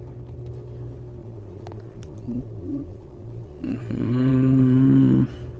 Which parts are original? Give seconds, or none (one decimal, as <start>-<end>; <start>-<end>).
0.0-1.2; 4.3-5.6